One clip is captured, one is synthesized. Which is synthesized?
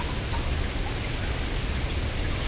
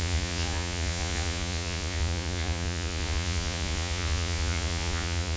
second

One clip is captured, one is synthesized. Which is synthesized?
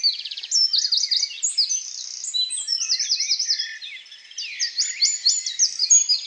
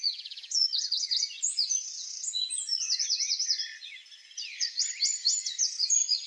second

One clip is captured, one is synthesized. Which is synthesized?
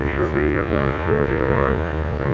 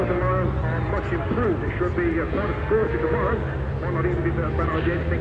first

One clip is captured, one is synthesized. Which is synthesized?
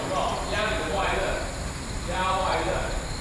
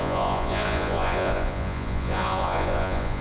second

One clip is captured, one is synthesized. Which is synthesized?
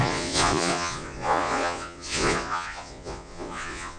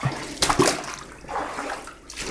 first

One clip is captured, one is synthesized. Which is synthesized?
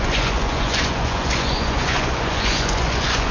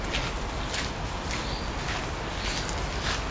first